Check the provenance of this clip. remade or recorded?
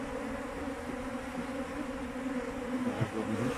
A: recorded